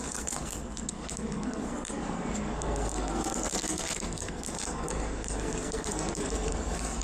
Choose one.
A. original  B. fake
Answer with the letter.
B